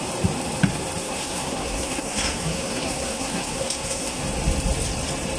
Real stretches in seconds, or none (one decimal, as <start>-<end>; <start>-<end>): 0.0-1.0; 4.2-5.4